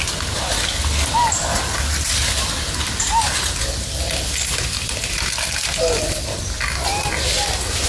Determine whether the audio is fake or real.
real